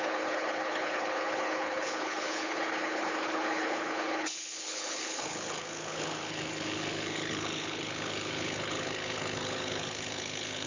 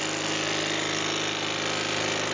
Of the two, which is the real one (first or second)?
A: second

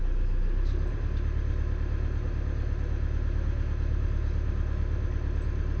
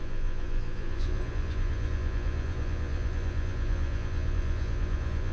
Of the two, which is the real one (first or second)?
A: first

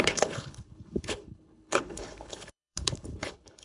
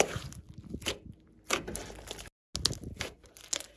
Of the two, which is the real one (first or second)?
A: second